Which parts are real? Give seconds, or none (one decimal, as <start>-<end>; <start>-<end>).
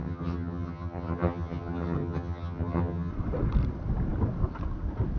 3.1-5.2